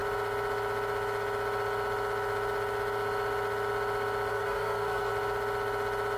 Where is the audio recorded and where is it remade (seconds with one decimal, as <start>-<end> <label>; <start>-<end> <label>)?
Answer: 0.0-4.3 recorded; 4.3-5.1 remade; 5.1-6.2 recorded